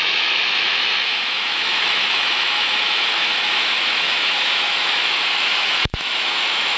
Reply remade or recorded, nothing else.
remade